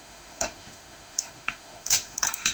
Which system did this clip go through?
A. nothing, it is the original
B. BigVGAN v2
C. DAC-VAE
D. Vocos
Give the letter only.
C